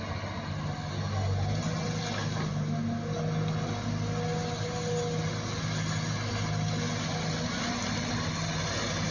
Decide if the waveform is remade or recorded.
recorded